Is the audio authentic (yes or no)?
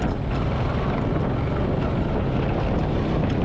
yes